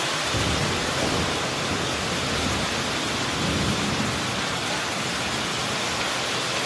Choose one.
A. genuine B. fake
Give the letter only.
A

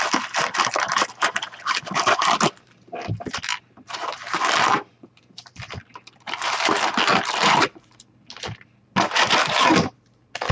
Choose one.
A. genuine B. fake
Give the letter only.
A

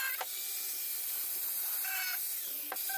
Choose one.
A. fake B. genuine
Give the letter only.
B